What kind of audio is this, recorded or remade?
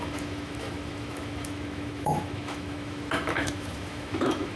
remade